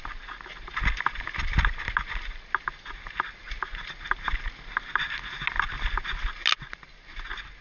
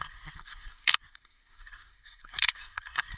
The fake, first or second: second